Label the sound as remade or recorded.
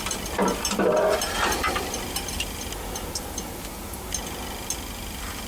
recorded